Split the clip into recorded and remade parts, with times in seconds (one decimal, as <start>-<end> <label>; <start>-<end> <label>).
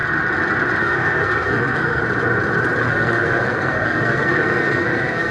0.0-0.8 recorded; 0.8-2.0 remade; 2.0-2.8 recorded; 2.8-5.3 remade